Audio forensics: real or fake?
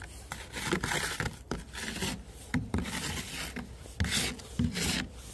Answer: real